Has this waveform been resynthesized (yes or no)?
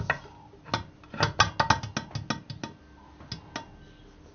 no